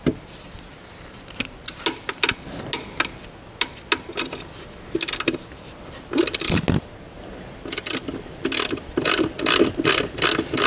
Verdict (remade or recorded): recorded